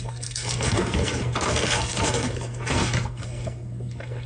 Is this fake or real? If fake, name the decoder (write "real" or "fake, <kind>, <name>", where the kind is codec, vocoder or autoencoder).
fake, codec, SNAC